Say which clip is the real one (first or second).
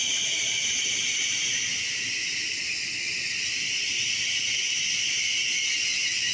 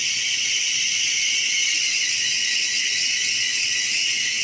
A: first